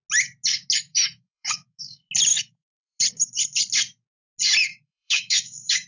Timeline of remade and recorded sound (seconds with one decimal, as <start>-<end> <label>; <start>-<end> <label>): 0.0-0.9 recorded; 0.9-1.8 remade; 1.8-2.3 recorded; 2.3-3.0 remade; 3.0-4.7 recorded; 4.7-5.9 remade